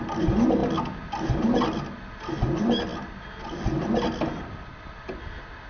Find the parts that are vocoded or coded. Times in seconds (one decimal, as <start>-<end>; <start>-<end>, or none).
none